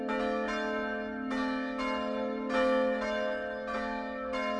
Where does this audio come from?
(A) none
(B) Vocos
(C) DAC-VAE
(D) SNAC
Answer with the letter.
A